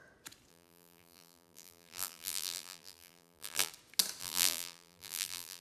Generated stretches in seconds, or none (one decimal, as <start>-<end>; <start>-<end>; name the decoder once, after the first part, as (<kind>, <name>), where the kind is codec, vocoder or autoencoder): 0.5-3.7 (vocoder, BigVGAN v2); 4.2-5.6

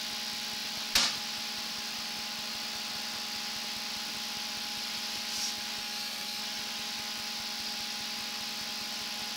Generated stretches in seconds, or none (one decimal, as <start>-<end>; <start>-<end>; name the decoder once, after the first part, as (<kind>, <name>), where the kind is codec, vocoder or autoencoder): 5.8-6.4 (codec, SNAC)

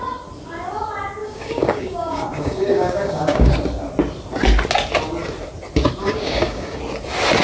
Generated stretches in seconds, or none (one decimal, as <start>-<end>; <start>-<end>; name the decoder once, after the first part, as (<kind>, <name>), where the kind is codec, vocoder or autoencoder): 1.2-3.5 (codec, DAC); 6.0-6.8

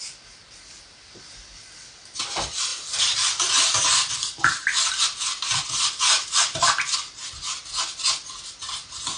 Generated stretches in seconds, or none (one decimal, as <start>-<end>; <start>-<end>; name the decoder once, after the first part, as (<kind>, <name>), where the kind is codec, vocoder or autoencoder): none